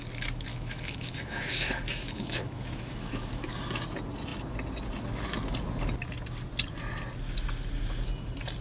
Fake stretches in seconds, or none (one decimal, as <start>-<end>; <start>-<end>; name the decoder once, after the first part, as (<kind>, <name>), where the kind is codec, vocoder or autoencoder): 0.5-3.5 (autoencoder, DAC-VAE)